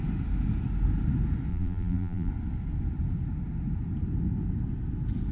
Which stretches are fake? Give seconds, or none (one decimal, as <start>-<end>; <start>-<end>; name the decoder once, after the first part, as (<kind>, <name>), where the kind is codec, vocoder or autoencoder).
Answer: 1.5-2.3 (vocoder, BigVGAN v2)